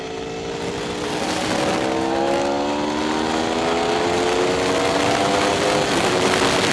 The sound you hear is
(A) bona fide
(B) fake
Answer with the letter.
A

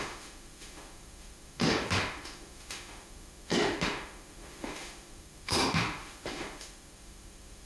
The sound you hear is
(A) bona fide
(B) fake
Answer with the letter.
B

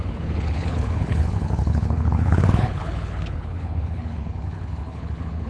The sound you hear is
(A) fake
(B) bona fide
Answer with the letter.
A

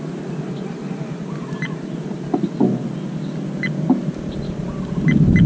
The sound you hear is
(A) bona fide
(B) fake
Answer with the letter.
A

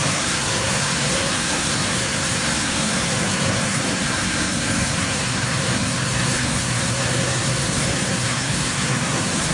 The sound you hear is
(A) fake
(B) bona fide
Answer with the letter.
A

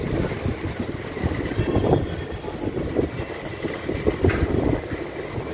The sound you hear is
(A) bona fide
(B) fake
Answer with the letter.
A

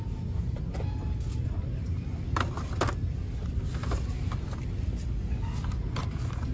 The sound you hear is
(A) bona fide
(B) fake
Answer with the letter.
A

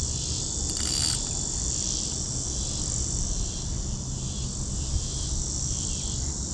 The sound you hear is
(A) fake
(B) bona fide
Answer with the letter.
B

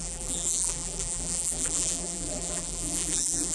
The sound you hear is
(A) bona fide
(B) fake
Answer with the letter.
B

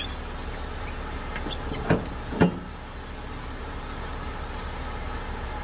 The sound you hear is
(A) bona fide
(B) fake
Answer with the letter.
A